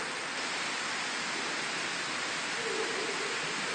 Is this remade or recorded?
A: recorded